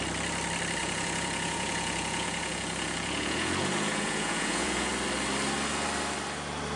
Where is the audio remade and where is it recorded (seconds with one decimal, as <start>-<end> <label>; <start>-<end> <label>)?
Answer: 0.0-0.8 recorded; 0.8-4.9 remade; 4.9-6.8 recorded